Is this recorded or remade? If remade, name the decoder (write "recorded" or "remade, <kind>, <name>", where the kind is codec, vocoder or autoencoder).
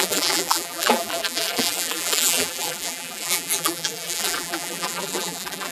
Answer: remade, vocoder, BigVGAN v2